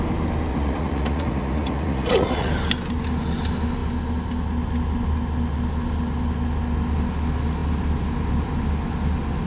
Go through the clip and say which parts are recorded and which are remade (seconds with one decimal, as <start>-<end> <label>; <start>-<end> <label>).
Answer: 0.0-0.5 recorded; 0.5-2.5 remade; 2.5-9.5 recorded